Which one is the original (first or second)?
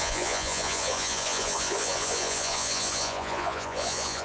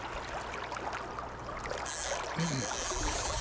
second